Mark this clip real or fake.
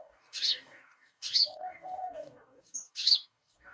fake